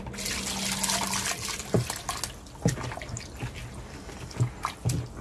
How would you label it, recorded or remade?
recorded